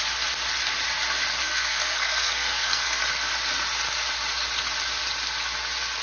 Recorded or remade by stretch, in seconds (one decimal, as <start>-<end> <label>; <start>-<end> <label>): 0.0-1.4 recorded; 1.4-3.0 remade; 3.0-6.0 recorded